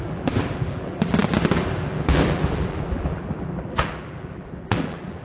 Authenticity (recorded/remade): remade